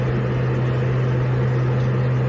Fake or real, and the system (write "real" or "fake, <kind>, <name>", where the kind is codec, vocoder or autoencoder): real